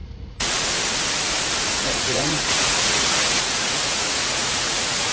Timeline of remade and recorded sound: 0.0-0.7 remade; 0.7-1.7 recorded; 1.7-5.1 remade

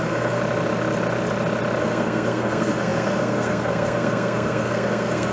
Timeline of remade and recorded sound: 0.0-0.4 remade; 0.4-1.8 recorded; 1.8-5.3 remade

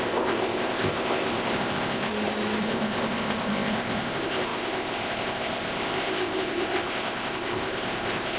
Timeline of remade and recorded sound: 0.0-2.1 remade; 2.1-2.6 recorded; 2.6-8.4 remade

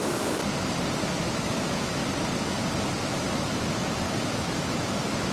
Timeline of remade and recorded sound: 0.0-0.4 remade; 0.4-1.4 recorded; 1.4-2.0 remade; 2.0-3.0 recorded; 3.0-5.3 remade